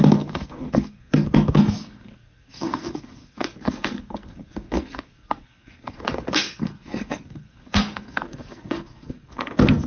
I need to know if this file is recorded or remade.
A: remade